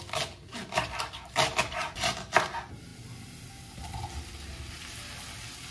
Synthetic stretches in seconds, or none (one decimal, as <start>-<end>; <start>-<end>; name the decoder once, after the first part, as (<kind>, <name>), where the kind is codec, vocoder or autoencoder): none